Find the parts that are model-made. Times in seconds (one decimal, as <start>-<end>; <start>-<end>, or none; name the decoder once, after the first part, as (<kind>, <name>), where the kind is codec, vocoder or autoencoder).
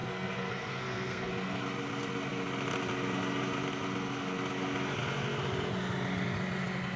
0.0-1.3 (codec, SNAC)